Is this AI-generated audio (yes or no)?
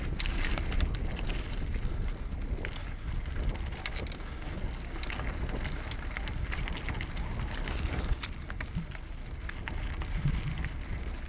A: no